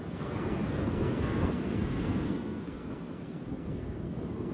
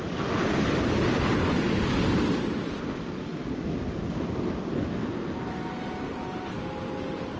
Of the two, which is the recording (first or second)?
second